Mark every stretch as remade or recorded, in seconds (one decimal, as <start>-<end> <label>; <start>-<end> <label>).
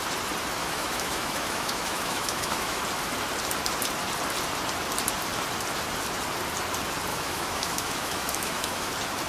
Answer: 0.0-0.6 recorded; 0.6-2.8 remade; 2.8-7.1 recorded; 7.1-8.9 remade; 8.9-9.3 recorded